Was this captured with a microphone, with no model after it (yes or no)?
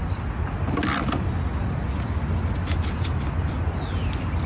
yes